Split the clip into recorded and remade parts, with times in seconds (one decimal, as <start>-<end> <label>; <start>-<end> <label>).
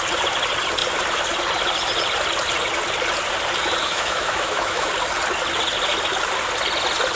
0.0-3.8 recorded; 3.8-4.9 remade; 4.9-7.2 recorded